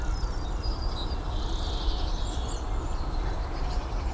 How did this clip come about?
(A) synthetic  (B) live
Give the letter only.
B